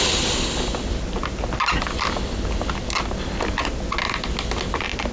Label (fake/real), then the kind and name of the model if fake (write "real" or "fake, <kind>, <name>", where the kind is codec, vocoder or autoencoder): real